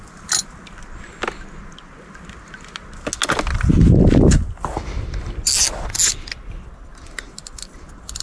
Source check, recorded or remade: recorded